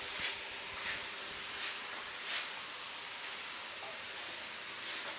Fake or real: fake